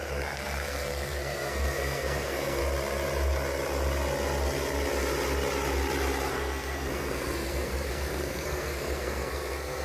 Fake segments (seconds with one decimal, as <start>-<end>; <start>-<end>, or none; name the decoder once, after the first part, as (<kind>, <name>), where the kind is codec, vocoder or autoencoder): 0.0-2.6 (codec, SNAC); 6.3-9.8